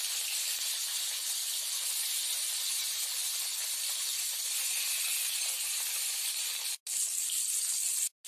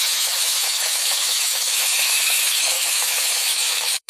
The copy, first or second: second